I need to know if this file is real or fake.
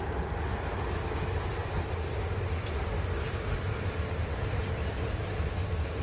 real